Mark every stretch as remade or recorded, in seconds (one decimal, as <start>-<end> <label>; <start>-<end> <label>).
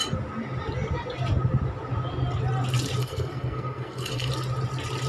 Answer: 0.0-3.0 recorded; 3.0-4.3 remade; 4.3-5.1 recorded